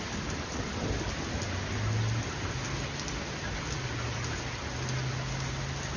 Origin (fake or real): real